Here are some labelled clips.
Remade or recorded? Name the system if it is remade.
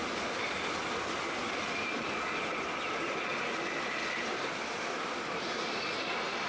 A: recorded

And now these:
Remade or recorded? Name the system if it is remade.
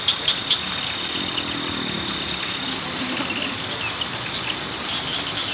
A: recorded